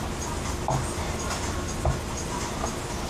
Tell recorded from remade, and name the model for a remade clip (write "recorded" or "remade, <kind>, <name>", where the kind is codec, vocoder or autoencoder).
recorded